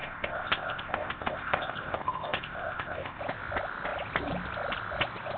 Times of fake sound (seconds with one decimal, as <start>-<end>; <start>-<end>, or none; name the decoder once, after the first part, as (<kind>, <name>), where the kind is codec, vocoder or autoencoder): 0.0-3.2 (codec, ZipCodec)